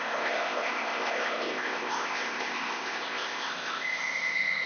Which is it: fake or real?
fake